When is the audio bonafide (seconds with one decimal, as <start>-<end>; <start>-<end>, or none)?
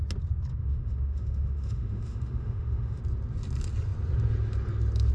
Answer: 0.0-0.5; 3.0-5.1